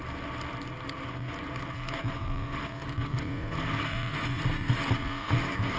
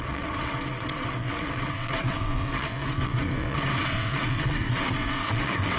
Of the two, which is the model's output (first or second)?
second